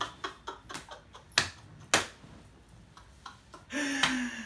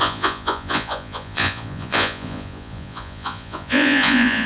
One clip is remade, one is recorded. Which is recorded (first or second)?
first